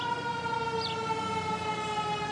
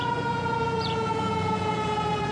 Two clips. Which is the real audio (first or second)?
first